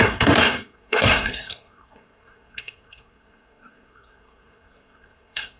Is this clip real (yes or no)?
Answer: no